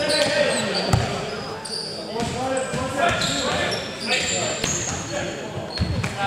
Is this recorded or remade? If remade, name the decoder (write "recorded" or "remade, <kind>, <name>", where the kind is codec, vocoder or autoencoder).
recorded